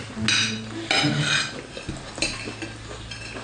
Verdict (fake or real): real